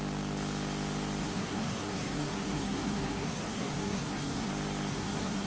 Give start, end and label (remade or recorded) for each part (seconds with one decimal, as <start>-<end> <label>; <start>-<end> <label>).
0.0-1.2 recorded; 1.2-4.5 remade; 4.5-4.9 recorded; 4.9-5.5 remade